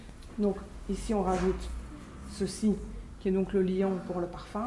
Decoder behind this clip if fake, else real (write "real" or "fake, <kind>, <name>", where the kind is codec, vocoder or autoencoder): real